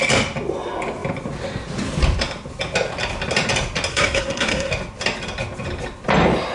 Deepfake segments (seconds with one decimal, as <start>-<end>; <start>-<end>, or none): 3.9-4.7